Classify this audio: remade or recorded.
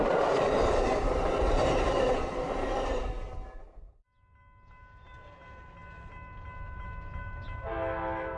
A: recorded